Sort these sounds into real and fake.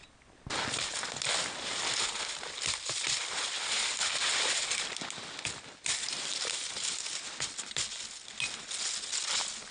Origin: real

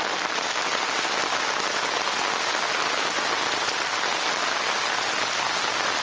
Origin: real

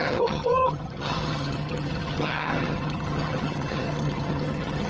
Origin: fake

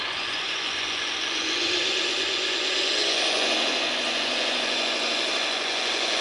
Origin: fake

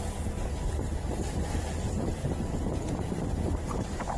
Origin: fake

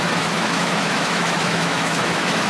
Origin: fake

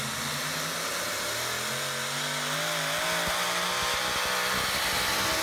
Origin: real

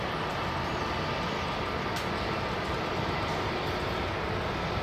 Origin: real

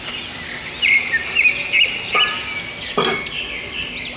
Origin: real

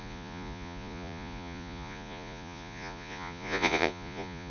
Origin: fake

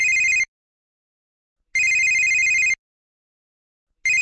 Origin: real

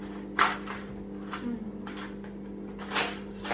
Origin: real